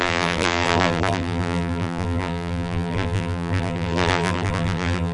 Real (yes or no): no